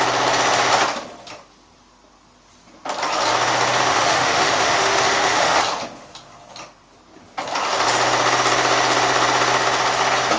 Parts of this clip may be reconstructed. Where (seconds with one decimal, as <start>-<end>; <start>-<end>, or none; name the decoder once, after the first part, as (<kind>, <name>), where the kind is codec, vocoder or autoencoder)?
3.9-5.6 (autoencoder, DAC-VAE)